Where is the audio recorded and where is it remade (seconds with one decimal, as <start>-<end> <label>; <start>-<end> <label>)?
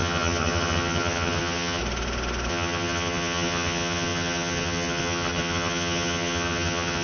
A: 0.0-1.8 remade; 1.8-2.5 recorded; 2.5-7.0 remade